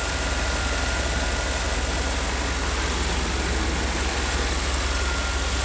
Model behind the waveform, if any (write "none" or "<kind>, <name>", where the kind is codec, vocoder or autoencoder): none